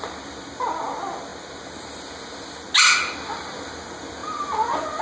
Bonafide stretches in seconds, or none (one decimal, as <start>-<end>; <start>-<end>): 0.0-5.0